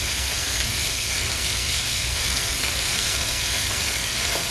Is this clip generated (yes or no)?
yes